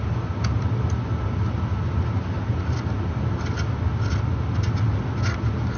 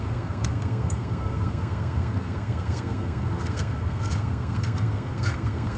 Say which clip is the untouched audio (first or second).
first